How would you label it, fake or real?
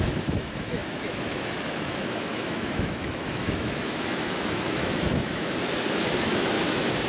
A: fake